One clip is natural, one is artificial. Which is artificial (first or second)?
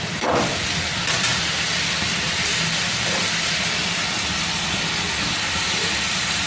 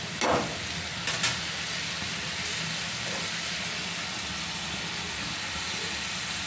first